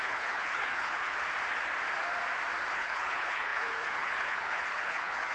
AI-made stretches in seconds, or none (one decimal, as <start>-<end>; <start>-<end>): 0.0-1.2; 2.7-5.3